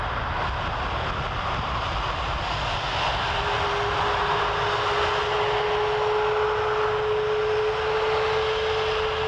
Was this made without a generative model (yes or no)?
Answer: yes